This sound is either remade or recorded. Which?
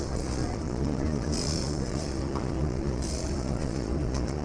remade